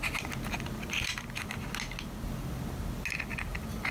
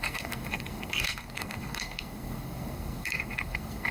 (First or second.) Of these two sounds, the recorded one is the first